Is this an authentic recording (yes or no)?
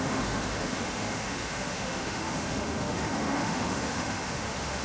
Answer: no